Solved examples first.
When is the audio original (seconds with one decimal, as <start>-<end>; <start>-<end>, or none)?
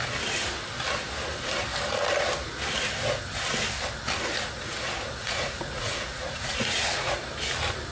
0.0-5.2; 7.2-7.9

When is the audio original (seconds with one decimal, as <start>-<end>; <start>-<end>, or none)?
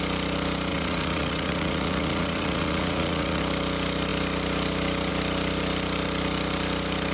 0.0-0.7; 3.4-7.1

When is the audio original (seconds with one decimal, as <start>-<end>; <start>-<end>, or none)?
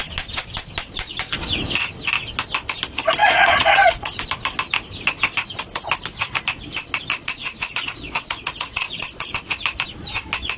0.0-3.2; 4.3-7.1; 9.3-10.6